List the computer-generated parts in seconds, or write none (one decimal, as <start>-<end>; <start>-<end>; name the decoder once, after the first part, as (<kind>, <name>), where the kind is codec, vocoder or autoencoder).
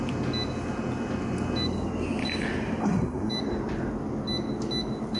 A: 2.8-3.3 (codec, SNAC)